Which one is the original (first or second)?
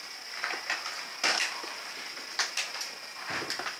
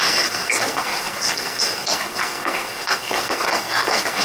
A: first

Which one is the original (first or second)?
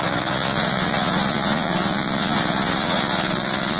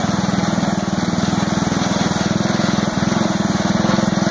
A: second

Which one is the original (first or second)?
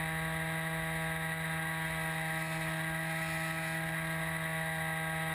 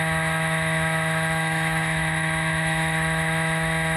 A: first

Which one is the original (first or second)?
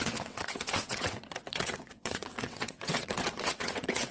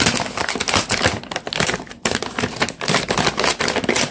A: second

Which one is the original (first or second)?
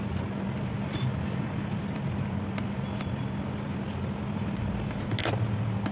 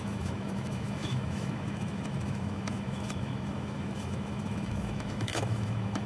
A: first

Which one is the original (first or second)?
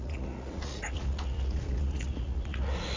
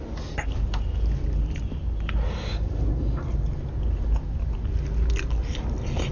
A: second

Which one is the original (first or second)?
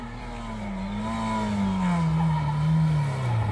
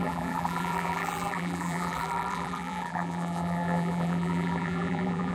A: first